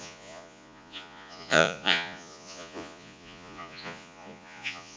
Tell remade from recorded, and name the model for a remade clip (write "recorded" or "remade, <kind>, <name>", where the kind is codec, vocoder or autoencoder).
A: remade, vocoder, Vocos